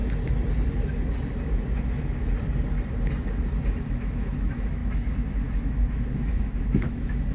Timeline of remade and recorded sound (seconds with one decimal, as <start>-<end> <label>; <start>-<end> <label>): 0.0-3.9 recorded; 3.9-7.3 remade